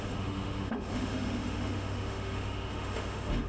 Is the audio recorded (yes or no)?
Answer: no